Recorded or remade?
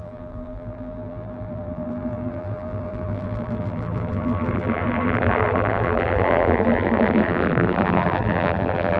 remade